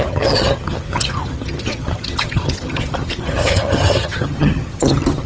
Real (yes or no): no